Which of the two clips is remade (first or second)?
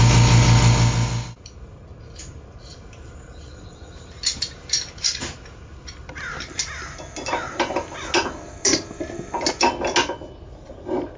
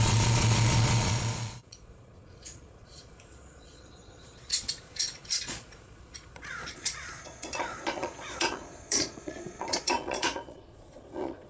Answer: second